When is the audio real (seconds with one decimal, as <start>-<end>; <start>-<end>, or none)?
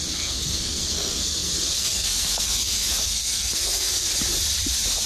4.1-5.1